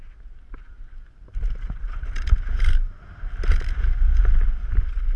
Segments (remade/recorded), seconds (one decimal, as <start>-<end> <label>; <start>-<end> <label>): 0.0-5.2 recorded